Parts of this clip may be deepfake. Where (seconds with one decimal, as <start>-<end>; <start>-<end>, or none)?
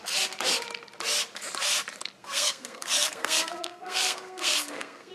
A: 2.2-5.1